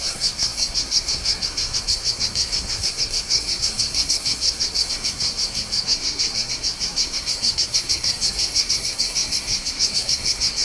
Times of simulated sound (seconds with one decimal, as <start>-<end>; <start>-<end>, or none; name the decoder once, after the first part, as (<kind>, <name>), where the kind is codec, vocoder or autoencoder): 0.0-10.6 (codec, SNAC)